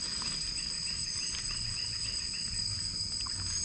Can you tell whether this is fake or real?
real